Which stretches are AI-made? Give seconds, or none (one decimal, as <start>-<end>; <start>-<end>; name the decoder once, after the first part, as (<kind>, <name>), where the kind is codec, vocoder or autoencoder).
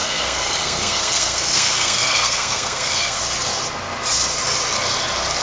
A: 0.0-3.2 (codec, SNAC)